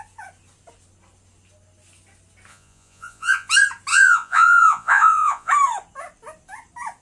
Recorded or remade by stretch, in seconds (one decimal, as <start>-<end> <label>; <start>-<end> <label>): 0.0-2.5 recorded; 2.5-3.5 remade; 3.5-3.9 recorded; 3.9-5.5 remade; 5.5-7.0 recorded